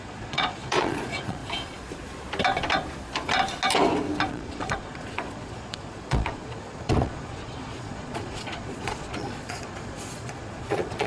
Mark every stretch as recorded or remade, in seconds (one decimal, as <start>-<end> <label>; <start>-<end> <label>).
0.0-1.4 remade; 1.4-4.3 recorded; 4.3-11.1 remade